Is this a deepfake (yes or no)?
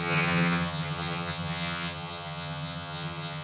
yes